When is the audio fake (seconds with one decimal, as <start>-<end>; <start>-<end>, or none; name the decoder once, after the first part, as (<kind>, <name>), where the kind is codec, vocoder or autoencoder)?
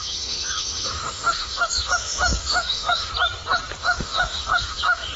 0.0-3.1 (autoencoder, DAC-VAE); 3.8-5.2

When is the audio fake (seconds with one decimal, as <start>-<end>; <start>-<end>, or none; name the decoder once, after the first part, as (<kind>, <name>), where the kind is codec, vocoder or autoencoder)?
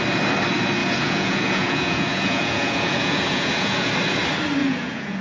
0.8-3.9 (vocoder, Vocos); 4.6-5.2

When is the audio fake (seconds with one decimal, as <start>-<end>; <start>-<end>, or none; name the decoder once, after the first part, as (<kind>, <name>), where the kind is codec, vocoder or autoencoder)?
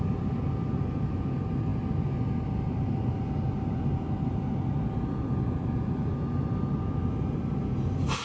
none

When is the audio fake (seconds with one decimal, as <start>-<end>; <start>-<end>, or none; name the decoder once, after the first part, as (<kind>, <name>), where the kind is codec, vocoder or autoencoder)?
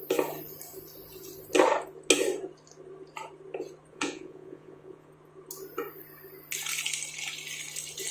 3.9-5.1 (vocoder, Vocos)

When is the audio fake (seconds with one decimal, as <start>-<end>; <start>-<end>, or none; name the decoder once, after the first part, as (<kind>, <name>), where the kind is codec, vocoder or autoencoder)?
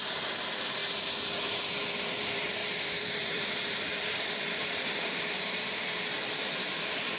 0.0-0.8 (vocoder, BigVGAN v2); 2.0-7.2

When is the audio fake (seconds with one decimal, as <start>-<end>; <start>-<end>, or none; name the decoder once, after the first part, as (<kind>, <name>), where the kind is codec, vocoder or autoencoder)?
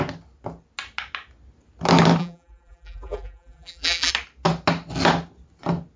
2.2-4.1 (vocoder, BigVGAN v2)